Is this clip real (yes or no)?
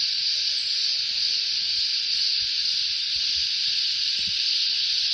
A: yes